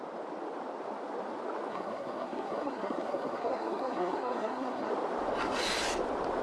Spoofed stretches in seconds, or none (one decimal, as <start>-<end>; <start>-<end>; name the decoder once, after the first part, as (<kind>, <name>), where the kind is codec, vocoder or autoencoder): 1.7-4.9 (codec, SNAC)